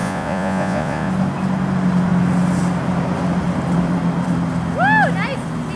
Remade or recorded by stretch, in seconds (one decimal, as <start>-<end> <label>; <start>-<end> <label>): 0.0-1.1 remade; 1.1-5.8 recorded